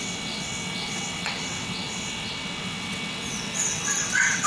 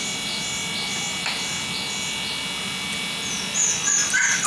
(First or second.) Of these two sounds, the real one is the second